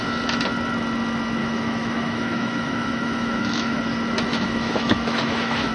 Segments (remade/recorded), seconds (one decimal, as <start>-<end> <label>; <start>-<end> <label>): 0.0-1.4 recorded; 1.4-3.8 remade; 3.8-4.3 recorded; 4.3-5.7 remade